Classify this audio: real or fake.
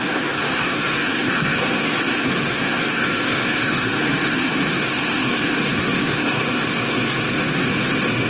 fake